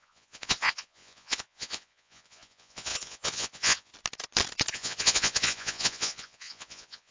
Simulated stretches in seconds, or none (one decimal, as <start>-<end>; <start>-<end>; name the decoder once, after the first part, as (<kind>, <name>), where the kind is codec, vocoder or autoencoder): 0.0-3.9 (vocoder, Vocos); 4.7-7.1